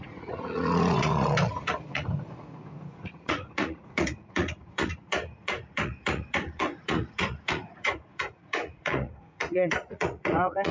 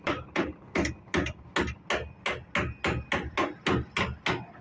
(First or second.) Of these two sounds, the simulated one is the first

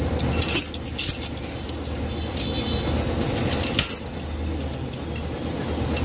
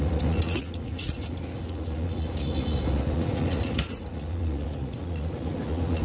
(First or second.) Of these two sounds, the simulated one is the second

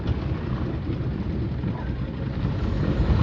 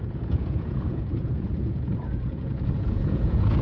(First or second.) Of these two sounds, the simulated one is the second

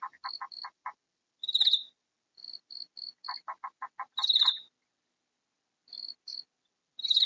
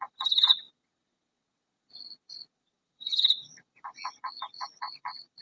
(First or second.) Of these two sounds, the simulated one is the second